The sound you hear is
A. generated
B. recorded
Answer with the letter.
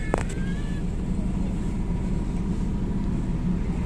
B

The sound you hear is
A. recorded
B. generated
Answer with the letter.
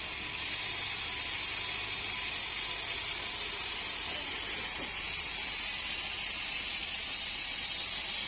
A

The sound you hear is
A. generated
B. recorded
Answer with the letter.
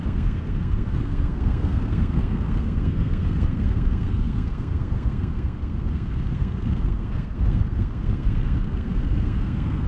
A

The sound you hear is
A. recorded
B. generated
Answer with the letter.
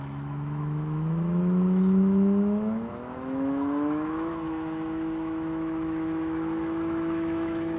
B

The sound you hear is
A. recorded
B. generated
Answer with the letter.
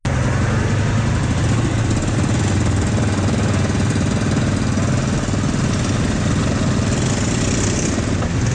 A